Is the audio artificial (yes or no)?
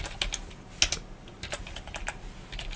no